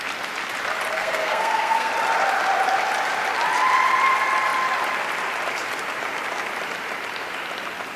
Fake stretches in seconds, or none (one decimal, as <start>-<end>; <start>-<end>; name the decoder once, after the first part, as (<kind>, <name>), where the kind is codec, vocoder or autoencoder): 0.9-1.9 (codec, SNAC)